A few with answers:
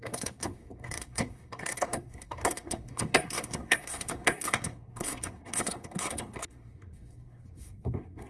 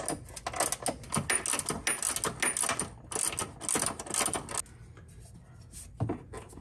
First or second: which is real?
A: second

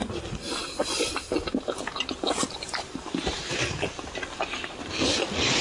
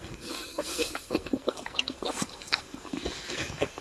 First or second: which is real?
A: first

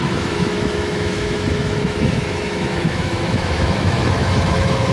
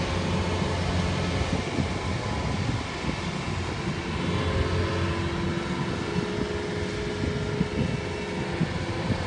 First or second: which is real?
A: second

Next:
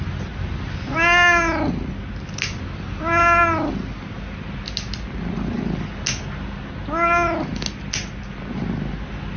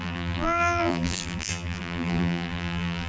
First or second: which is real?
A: first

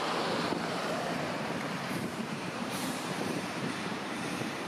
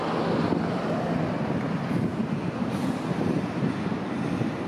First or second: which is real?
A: second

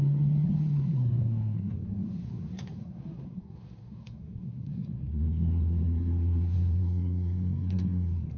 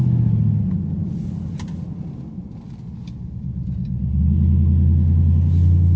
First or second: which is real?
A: second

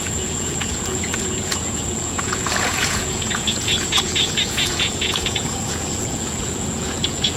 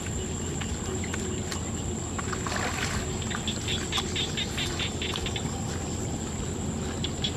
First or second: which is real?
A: second